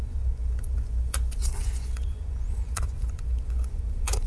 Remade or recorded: remade